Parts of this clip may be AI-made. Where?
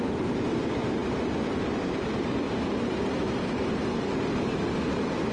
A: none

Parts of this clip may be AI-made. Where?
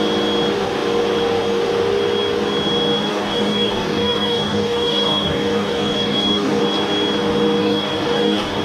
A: 3.1-6.6 (codec, DAC); 7.6-8.6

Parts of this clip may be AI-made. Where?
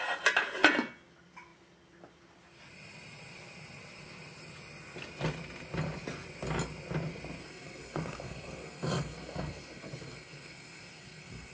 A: 7.4-11.5 (codec, SNAC)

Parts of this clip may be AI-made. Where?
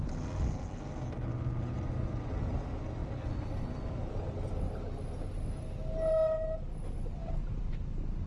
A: 3.0-4.6 (vocoder, BigVGAN v2); 7.2-7.7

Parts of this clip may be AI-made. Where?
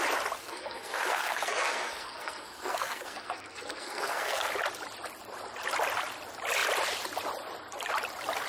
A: 0.4-4.5 (codec, SNAC)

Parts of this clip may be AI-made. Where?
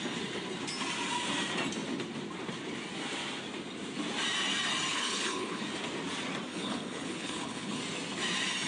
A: 4.9-5.6 (codec, HILCodec); 6.5-7.8